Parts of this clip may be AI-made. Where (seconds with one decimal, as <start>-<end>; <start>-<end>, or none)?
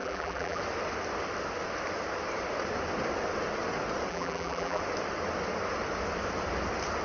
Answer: 0.0-0.6; 4.1-4.8